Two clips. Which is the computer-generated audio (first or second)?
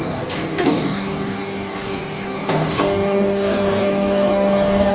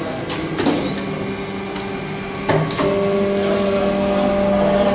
first